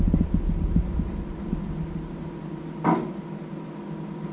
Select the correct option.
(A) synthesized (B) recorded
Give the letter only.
B